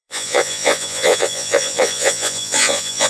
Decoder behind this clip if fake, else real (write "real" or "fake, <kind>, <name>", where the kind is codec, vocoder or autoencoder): fake, vocoder, Vocos